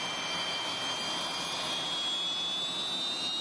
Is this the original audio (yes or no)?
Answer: yes